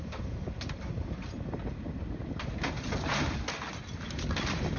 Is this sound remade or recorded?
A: recorded